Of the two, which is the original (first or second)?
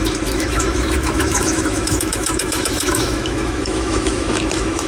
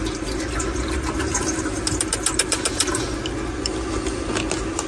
second